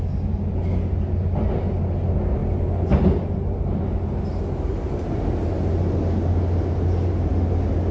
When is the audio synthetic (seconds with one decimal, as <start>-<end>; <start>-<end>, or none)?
none